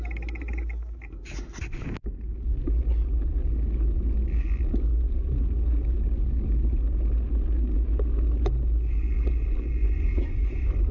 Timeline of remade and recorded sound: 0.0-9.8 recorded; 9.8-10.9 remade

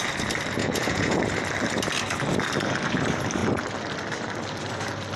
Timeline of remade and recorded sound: 0.0-0.6 recorded; 0.6-1.2 remade; 1.2-5.2 recorded

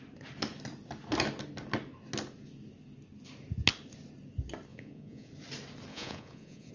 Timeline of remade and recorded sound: 0.0-4.7 recorded; 4.7-5.3 remade; 5.3-5.9 recorded; 5.9-6.7 remade

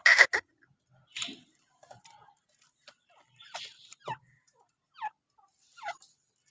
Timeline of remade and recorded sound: 0.0-6.5 recorded

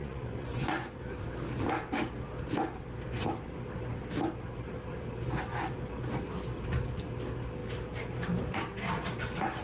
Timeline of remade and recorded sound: 0.0-1.0 remade; 1.0-9.6 recorded

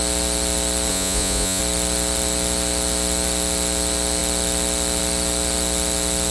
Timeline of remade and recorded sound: 0.0-0.9 recorded; 0.9-1.6 remade; 1.6-6.3 recorded

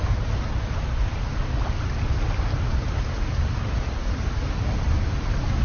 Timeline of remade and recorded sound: 0.0-5.6 recorded